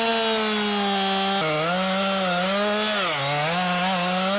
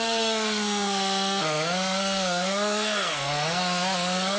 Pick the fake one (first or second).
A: second